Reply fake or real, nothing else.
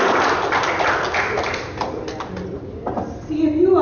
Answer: real